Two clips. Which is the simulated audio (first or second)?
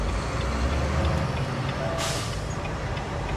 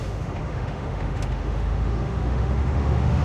second